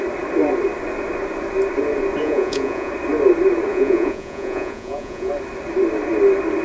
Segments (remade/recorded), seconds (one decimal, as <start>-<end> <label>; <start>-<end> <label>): 0.0-2.2 recorded; 2.2-2.9 remade; 2.9-3.7 recorded; 3.7-5.3 remade; 5.3-6.6 recorded